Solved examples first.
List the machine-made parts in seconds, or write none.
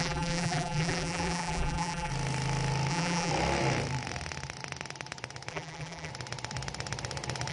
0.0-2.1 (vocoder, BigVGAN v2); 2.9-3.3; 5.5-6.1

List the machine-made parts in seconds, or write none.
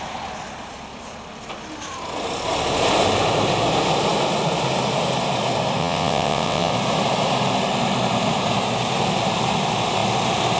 5.8-6.7 (vocoder, WaveNeXt)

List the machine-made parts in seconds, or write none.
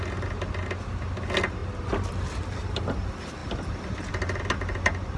none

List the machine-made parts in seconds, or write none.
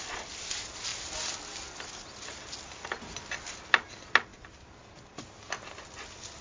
none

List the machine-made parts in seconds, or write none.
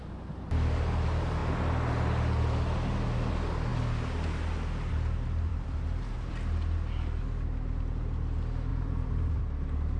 5.5-6.3 (vocoder, BigVGAN v2); 8.7-9.4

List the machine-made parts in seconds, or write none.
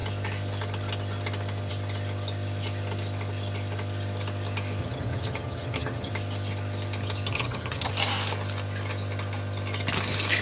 4.8-6.1 (vocoder, HiFi-GAN); 7.3-7.9